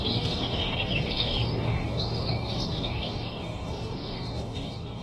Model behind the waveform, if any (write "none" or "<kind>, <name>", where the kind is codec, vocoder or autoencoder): codec, DAC